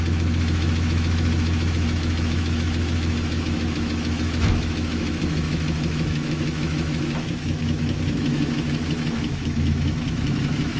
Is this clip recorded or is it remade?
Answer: remade